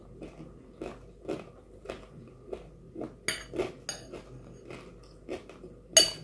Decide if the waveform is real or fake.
real